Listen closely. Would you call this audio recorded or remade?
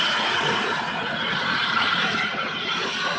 remade